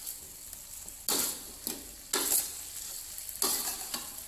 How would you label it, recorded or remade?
recorded